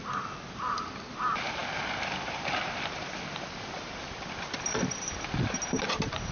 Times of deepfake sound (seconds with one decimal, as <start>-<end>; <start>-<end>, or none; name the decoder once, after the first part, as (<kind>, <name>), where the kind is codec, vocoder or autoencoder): none